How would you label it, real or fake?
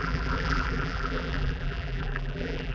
fake